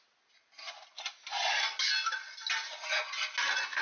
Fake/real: real